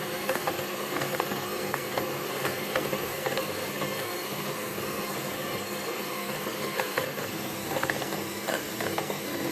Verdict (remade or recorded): remade